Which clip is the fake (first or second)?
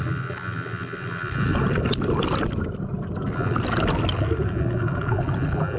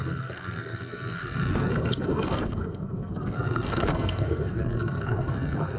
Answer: second